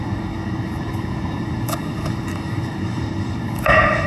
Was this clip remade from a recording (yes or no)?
yes